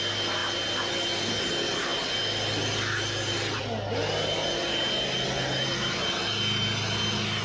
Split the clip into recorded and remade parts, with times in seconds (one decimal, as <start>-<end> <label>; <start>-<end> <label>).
0.0-7.4 recorded